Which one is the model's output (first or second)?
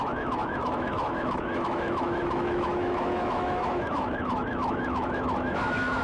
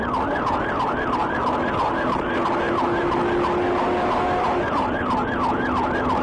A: first